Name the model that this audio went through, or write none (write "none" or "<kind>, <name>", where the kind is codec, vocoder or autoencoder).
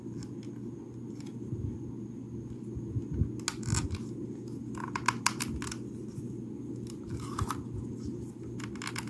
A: none